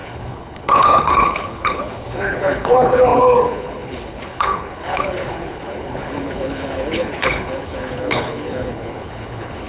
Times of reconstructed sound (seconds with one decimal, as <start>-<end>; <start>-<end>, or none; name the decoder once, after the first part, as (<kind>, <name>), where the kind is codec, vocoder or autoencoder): 0.0-9.7 (codec, HILCodec)